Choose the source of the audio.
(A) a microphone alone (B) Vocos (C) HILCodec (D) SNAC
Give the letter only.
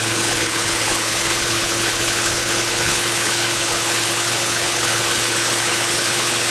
C